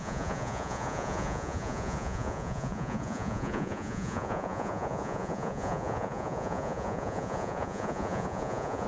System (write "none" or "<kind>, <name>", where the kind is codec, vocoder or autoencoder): vocoder, Vocos